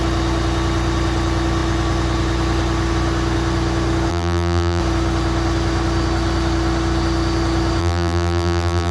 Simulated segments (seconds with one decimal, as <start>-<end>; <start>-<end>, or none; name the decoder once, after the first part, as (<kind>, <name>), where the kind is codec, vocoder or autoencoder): 4.1-4.8 (vocoder, BigVGAN v2); 7.8-8.9